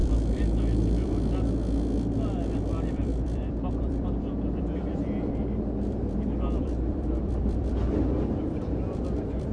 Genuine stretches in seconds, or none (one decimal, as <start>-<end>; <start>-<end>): none